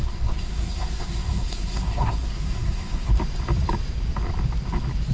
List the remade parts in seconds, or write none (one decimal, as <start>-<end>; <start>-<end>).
0.0-3.1